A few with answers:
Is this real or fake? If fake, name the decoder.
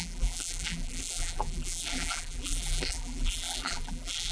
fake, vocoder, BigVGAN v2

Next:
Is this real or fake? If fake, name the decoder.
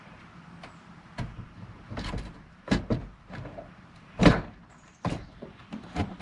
fake, vocoder, BigVGAN v2